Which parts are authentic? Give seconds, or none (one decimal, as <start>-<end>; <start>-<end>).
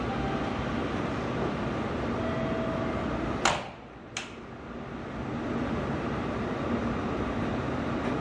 0.0-6.8